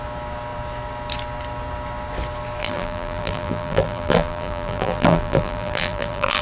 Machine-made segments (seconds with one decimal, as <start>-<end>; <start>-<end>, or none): 2.6-6.4